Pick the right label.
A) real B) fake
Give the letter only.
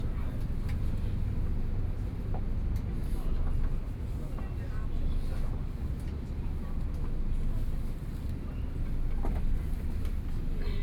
A